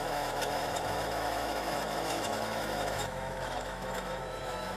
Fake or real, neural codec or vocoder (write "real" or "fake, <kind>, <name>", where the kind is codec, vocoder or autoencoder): fake, autoencoder, DAC-VAE